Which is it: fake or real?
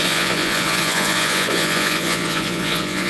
fake